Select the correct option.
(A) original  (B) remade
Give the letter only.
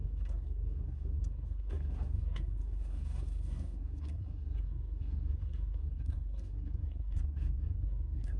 B